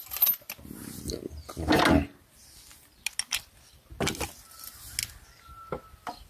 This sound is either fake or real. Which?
real